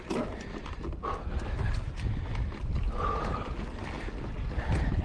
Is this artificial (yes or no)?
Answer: no